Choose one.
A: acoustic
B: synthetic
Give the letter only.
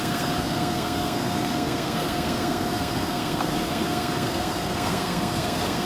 B